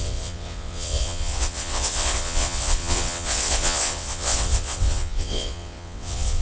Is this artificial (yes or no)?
yes